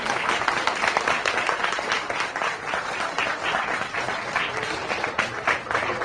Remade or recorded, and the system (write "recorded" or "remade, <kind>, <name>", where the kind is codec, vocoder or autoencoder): recorded